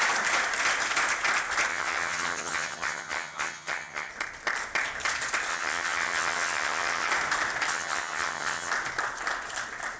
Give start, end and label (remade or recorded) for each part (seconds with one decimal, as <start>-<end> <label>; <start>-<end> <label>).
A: 0.0-1.7 recorded; 1.7-4.1 remade; 4.1-5.5 recorded; 5.5-7.1 remade; 7.1-7.7 recorded; 7.7-8.7 remade; 8.7-10.0 recorded